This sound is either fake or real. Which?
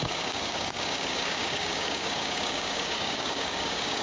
fake